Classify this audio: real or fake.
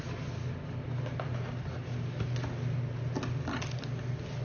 real